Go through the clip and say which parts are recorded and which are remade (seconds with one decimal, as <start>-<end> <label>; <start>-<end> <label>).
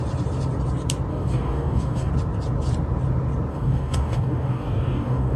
0.0-1.1 recorded; 1.1-2.1 remade; 2.1-3.5 recorded; 3.5-5.4 remade